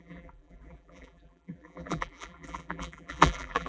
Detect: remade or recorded remade